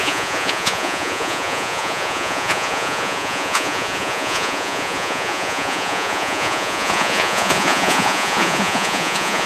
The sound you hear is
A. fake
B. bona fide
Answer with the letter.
A